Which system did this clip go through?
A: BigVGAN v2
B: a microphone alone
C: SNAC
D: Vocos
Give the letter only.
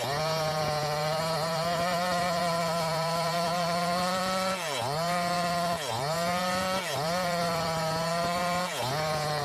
D